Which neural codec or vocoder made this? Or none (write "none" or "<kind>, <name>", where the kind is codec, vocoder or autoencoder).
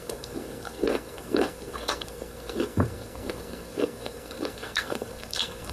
codec, SNAC